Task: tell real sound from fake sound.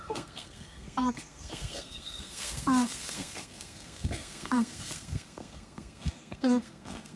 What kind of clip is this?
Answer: fake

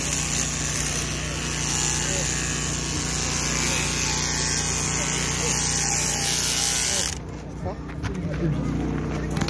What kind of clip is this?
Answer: real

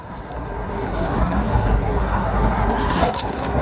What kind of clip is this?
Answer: fake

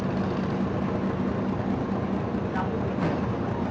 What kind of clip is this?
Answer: real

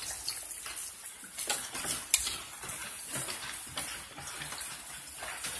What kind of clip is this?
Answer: real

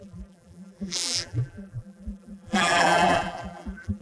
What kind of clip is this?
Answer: fake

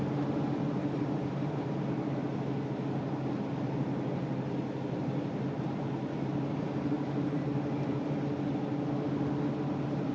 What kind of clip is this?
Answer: real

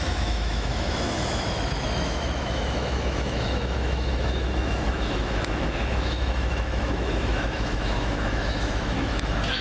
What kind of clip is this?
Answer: fake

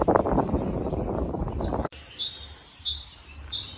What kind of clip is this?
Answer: real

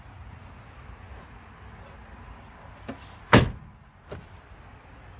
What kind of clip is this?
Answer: real